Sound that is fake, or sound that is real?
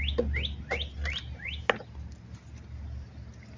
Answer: real